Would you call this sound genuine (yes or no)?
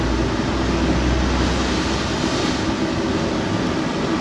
yes